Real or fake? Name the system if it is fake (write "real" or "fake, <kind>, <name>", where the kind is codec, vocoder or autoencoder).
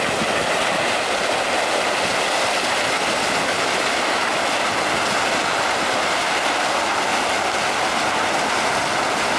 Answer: real